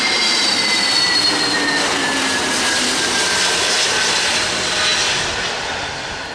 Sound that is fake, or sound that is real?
real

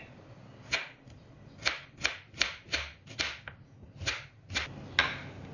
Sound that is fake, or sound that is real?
real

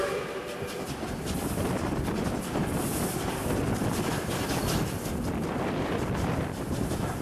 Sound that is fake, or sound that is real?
fake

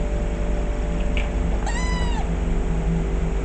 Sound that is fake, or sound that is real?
real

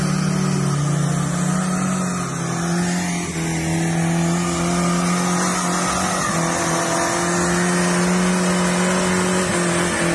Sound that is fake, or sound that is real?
real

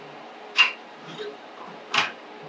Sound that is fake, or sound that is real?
fake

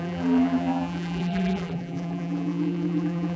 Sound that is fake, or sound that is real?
fake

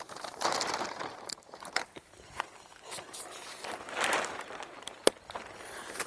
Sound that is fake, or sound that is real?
fake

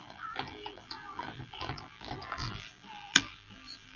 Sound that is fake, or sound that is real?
fake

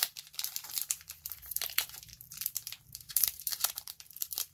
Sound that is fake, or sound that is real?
fake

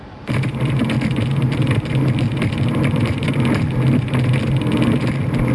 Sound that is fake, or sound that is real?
fake